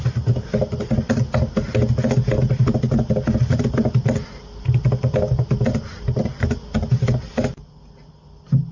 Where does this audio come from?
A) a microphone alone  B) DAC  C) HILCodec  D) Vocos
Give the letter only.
A